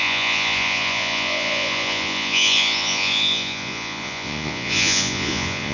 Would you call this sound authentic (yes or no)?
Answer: no